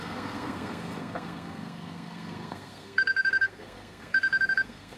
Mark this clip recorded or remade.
remade